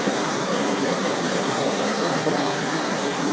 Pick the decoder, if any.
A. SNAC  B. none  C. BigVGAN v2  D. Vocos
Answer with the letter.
A